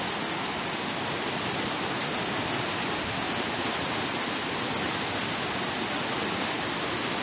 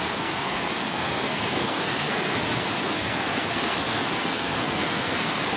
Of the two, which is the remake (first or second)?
second